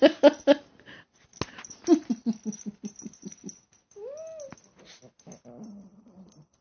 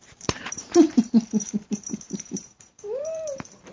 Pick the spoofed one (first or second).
second